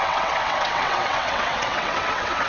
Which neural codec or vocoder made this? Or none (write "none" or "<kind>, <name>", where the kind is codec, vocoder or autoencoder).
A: vocoder, WaveNeXt